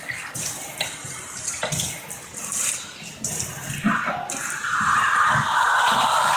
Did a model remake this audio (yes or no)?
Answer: no